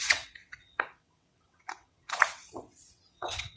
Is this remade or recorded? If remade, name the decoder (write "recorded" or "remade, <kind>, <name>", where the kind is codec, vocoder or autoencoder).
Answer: remade, vocoder, WaveNeXt